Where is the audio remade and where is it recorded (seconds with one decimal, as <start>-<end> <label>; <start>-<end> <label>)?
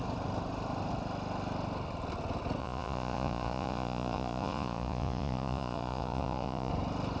0.0-2.6 recorded; 2.6-6.7 remade; 6.7-7.2 recorded